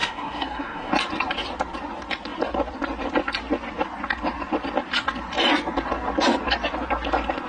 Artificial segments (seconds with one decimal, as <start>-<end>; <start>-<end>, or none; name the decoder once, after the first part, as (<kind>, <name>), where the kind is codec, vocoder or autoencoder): 0.0-0.9 (codec, SNAC)